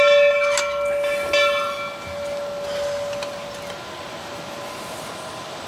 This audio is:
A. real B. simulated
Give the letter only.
A